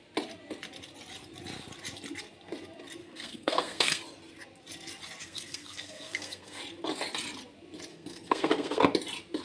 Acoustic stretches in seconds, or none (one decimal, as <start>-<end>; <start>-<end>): 0.0-3.0; 4.0-5.2; 6.6-7.9; 8.8-9.4